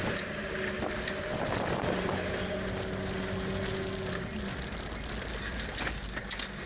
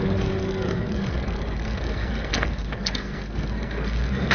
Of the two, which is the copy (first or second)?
second